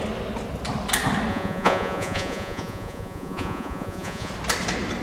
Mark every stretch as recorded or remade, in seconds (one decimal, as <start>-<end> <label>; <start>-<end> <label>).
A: 0.0-1.3 recorded; 1.3-4.3 remade; 4.3-5.0 recorded

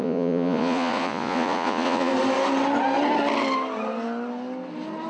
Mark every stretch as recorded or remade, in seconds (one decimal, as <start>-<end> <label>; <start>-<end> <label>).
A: 0.0-2.1 remade; 2.1-5.1 recorded

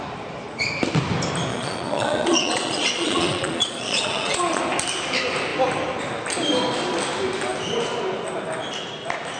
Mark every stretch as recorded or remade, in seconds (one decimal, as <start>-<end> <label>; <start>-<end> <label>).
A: 0.0-1.5 recorded; 1.5-4.6 remade; 4.6-9.4 recorded

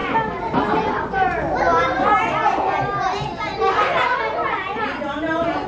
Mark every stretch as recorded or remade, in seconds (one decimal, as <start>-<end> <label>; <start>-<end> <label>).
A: 0.0-5.7 recorded

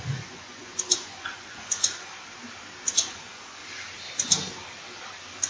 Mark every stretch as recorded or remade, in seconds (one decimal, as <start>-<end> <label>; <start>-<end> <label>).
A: 0.0-2.1 remade; 2.1-2.9 recorded; 2.9-3.6 remade; 3.6-5.5 recorded